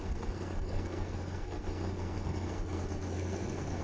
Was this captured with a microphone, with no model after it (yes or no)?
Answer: no